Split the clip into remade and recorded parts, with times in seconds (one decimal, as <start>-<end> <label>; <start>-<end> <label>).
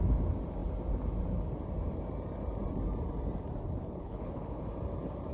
0.0-3.8 recorded; 3.8-4.6 remade; 4.6-5.3 recorded